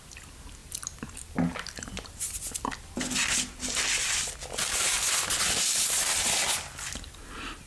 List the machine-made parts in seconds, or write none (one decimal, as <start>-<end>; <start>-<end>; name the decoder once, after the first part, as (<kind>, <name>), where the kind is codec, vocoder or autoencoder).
none